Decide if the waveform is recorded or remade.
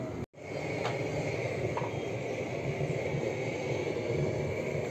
recorded